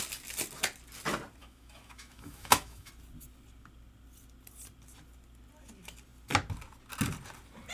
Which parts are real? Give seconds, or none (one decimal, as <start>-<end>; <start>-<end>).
0.0-1.4; 2.9-7.7